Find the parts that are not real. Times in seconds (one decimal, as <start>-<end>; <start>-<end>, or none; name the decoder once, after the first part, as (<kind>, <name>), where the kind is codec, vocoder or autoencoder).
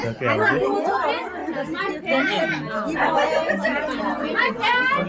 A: none